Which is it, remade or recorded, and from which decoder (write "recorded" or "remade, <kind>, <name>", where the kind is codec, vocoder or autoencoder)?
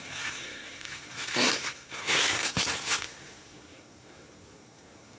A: remade, codec, SNAC